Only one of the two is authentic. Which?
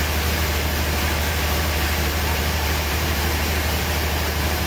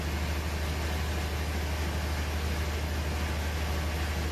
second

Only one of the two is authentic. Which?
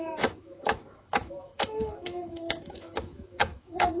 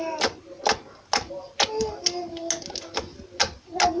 second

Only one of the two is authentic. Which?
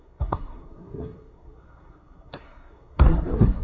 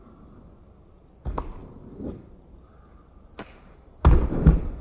second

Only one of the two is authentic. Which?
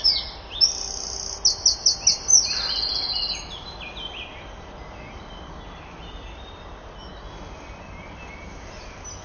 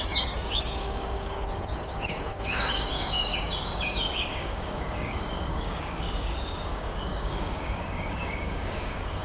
first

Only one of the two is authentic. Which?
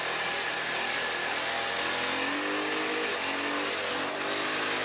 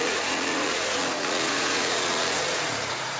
first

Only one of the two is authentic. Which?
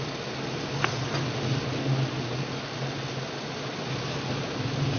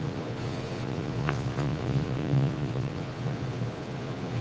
first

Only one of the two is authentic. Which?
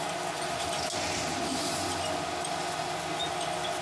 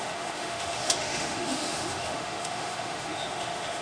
first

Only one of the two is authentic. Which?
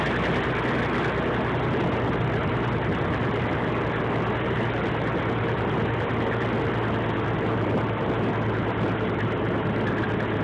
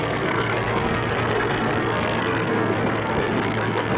first